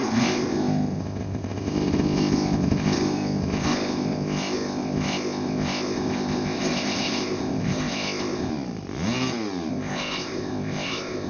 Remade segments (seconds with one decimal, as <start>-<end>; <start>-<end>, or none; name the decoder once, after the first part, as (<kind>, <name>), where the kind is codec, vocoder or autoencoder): 0.0-8.5 (codec, ZipCodec); 9.7-11.3